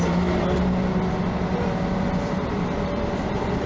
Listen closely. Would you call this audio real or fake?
real